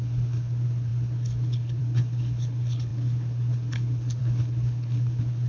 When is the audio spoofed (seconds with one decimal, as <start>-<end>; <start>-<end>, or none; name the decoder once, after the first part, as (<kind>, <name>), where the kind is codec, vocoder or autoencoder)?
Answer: 0.0-5.5 (codec, HILCodec)